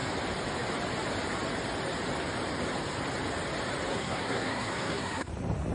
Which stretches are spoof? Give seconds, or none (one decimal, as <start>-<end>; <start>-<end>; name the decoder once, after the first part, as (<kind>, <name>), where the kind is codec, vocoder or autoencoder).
3.9-5.3 (codec, SNAC)